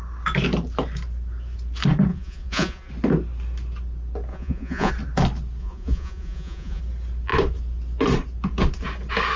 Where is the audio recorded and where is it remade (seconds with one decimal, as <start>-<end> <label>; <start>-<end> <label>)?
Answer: 0.0-2.1 recorded; 2.1-2.9 remade; 2.9-4.3 recorded; 4.3-4.9 remade; 4.9-5.6 recorded; 5.6-6.8 remade; 6.8-9.4 recorded